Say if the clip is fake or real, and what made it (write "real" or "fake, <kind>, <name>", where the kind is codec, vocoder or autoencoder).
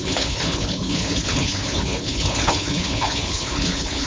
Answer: fake, codec, HILCodec